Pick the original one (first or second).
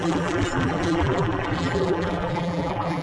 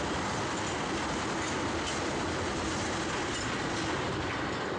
second